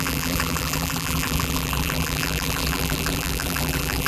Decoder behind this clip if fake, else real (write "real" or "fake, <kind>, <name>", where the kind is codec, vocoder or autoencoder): fake, vocoder, BigVGAN v2